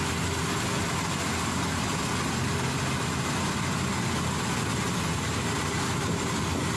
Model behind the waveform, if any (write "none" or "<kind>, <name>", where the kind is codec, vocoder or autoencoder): none